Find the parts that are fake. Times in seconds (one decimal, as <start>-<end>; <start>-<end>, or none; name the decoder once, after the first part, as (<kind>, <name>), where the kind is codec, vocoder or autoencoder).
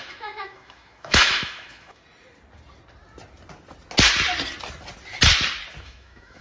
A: 0.0-2.0 (autoencoder, DAC-VAE); 5.8-6.4